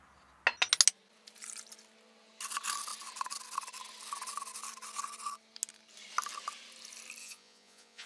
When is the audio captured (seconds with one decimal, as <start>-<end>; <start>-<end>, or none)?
0.0-7.2